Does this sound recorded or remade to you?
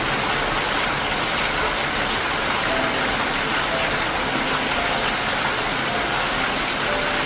recorded